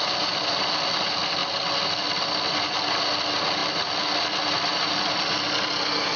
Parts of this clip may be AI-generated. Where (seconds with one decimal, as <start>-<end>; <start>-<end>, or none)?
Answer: none